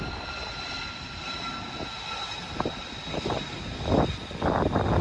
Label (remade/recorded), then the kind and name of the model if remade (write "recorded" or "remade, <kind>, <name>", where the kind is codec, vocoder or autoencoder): recorded